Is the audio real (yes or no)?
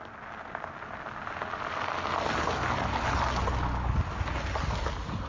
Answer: yes